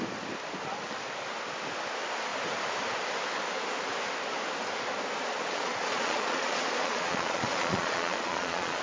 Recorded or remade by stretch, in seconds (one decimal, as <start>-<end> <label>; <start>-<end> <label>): 0.0-5.2 recorded; 5.2-8.8 remade